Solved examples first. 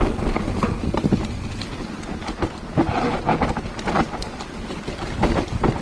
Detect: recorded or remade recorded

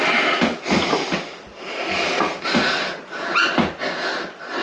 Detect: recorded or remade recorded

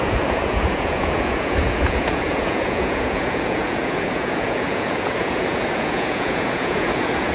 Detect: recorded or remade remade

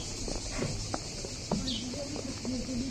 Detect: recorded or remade recorded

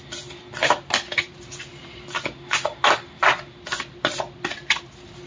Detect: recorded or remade recorded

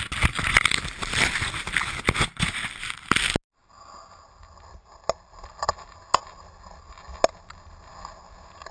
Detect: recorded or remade recorded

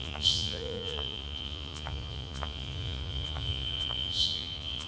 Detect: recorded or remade remade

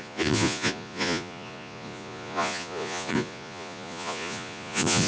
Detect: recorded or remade remade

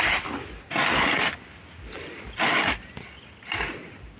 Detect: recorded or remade recorded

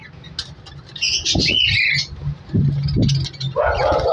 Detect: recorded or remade recorded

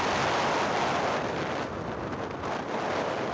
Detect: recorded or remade recorded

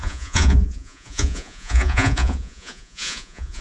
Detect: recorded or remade remade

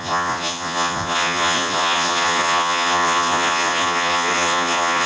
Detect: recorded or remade remade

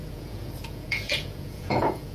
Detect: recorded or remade remade